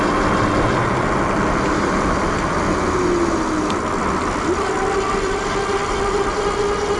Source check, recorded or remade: recorded